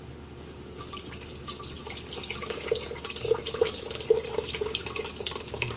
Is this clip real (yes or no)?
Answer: no